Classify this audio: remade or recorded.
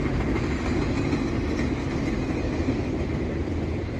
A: recorded